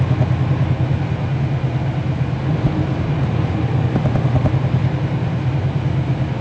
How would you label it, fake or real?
real